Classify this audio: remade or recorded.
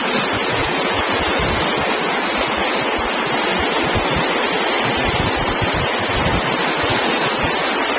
recorded